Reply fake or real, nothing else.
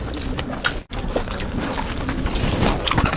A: real